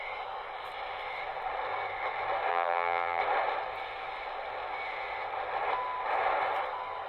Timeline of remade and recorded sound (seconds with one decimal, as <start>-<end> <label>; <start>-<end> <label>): 0.0-2.5 recorded; 2.5-3.2 remade; 3.2-7.1 recorded